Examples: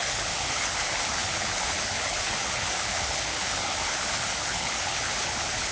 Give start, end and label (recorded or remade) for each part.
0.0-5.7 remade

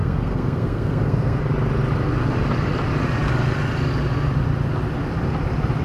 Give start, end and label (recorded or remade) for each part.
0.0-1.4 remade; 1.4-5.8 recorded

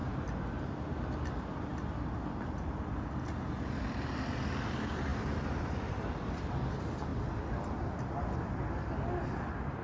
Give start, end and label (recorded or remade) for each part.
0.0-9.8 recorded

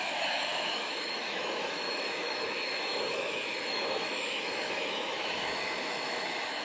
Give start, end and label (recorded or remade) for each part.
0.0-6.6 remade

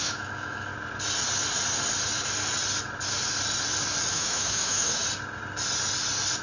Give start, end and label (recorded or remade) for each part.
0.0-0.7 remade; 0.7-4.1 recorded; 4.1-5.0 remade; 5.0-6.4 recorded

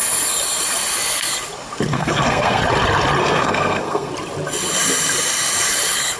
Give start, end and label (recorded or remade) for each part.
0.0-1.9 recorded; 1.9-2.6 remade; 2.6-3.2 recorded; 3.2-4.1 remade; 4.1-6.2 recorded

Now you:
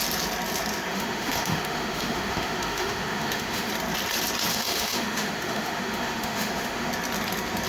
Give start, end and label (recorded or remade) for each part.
0.0-0.9 recorded; 0.9-3.7 remade; 3.7-4.5 recorded; 4.5-6.9 remade; 6.9-7.7 recorded

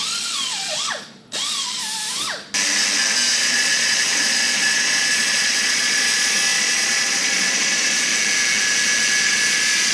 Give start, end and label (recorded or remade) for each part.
0.0-1.8 remade; 1.8-3.4 recorded; 3.4-8.1 remade; 8.1-9.2 recorded; 9.2-9.9 remade